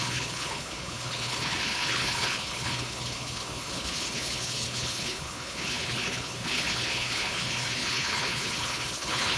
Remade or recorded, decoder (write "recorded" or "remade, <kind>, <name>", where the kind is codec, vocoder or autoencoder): remade, codec, HILCodec